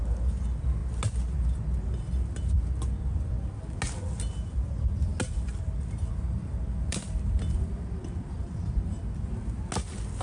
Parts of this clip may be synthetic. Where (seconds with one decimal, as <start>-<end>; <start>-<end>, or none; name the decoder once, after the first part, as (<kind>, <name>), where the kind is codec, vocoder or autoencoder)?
none